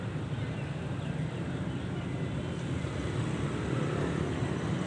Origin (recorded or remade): recorded